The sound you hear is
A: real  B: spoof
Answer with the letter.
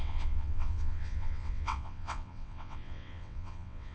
B